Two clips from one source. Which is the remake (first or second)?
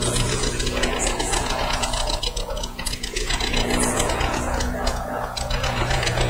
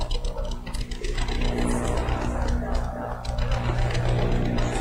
first